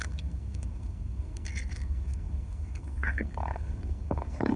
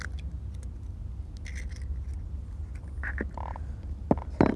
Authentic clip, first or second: second